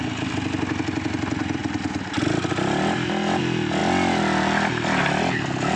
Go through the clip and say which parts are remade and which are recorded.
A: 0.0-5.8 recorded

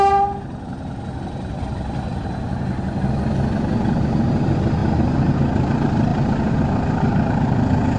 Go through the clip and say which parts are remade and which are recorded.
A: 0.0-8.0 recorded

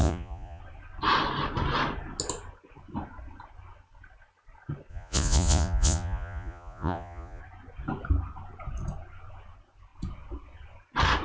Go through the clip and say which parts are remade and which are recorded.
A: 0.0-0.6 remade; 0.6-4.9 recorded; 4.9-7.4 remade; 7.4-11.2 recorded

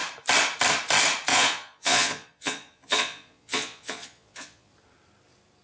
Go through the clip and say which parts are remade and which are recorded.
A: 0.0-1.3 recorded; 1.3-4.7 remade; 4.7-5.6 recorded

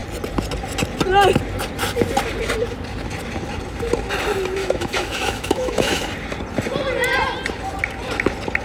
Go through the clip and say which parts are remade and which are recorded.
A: 0.0-4.6 recorded; 4.6-6.0 remade; 6.0-8.6 recorded

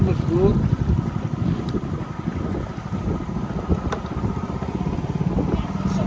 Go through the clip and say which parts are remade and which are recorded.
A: 0.0-6.1 recorded

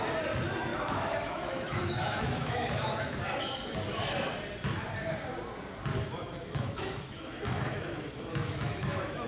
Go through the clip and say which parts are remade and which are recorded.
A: 0.0-0.7 recorded; 0.7-3.2 remade; 3.2-6.0 recorded; 6.0-9.3 remade